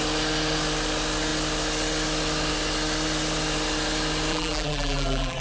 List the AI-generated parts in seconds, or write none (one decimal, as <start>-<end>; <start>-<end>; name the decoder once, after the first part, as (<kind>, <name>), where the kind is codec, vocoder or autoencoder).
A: 4.3-5.4 (vocoder, BigVGAN v2)